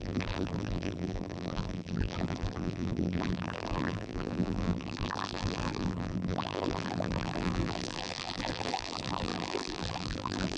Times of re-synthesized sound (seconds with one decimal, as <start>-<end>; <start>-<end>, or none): 0.0-10.6